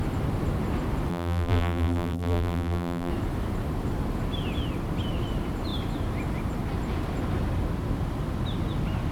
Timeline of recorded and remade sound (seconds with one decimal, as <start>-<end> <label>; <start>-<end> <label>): 0.0-1.1 recorded; 1.1-3.1 remade; 3.1-9.1 recorded